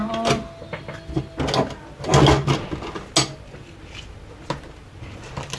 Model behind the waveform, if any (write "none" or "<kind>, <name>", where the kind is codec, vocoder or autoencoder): none